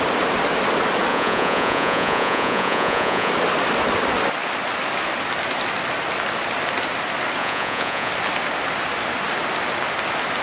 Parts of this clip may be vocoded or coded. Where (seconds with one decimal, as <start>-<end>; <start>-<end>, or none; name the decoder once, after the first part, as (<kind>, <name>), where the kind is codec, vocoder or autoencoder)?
1.1-3.3 (vocoder, Vocos); 7.4-8.1